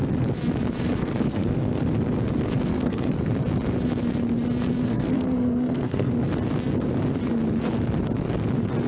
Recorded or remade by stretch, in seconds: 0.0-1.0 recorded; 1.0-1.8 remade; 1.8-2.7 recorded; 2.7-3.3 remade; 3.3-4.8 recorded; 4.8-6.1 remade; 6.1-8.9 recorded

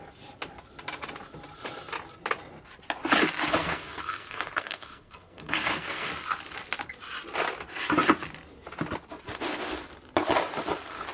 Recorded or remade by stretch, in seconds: 0.0-3.6 recorded; 3.6-6.1 remade; 6.1-11.1 recorded

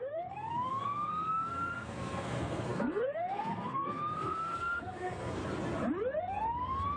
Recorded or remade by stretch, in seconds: 0.0-5.4 remade; 5.4-6.2 recorded; 6.2-7.0 remade

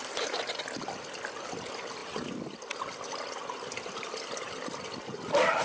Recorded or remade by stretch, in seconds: 0.0-5.6 recorded

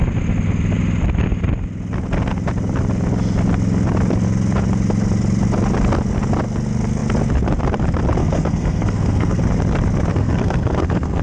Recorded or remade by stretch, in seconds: 0.0-8.2 recorded; 8.2-9.4 remade; 9.4-10.1 recorded; 10.1-11.2 remade

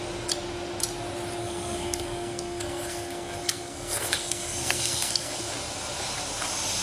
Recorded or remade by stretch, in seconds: 0.0-1.4 recorded; 1.4-5.5 remade; 5.5-6.8 recorded

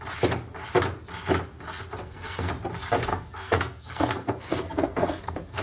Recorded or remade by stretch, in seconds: 0.0-2.0 recorded; 2.0-2.5 remade; 2.5-3.1 recorded; 3.1-5.6 remade